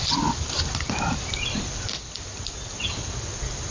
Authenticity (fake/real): real